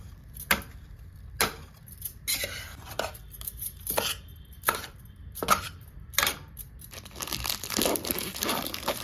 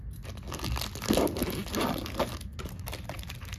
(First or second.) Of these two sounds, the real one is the second